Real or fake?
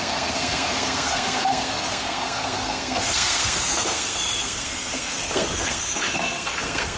fake